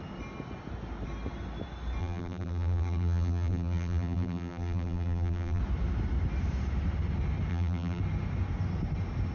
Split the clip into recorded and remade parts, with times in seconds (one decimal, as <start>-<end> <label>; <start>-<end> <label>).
0.0-2.0 recorded; 2.0-5.6 remade; 5.6-7.5 recorded; 7.5-8.0 remade; 8.0-9.3 recorded